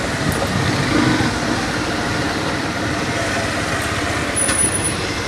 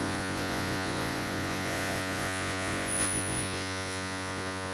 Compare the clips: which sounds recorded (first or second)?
first